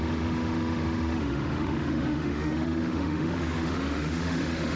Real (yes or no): no